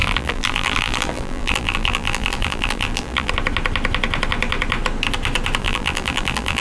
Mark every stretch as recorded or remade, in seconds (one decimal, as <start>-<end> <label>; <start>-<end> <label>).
0.0-3.3 remade; 3.3-5.6 recorded; 5.6-6.6 remade